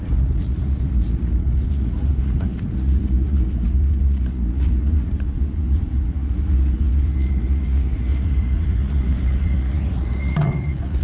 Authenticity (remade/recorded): remade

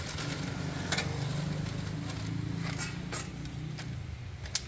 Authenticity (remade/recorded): recorded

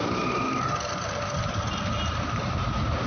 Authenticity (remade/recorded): remade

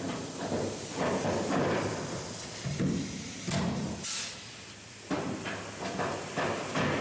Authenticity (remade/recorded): remade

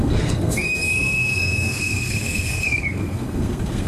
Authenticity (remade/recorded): remade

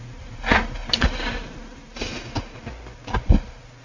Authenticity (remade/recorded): recorded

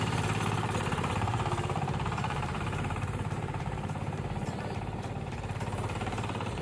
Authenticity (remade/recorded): remade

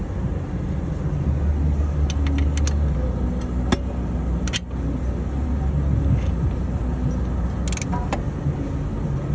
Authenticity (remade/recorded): recorded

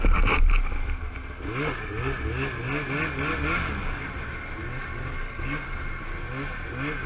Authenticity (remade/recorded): recorded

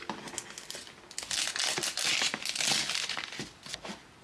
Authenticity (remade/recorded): recorded